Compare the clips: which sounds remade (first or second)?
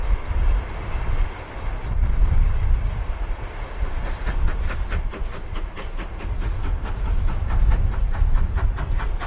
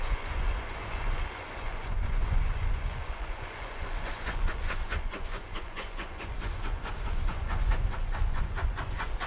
second